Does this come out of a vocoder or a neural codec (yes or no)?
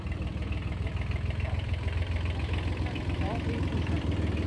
yes